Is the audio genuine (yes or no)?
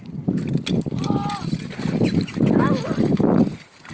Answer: yes